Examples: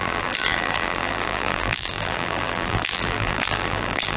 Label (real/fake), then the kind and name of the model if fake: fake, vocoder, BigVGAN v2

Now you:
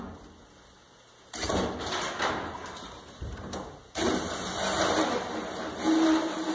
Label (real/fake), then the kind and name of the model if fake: real